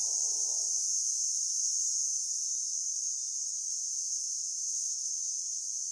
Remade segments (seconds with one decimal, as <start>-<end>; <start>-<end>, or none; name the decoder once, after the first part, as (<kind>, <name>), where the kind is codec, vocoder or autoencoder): 3.7-5.1 (vocoder, WaveNeXt)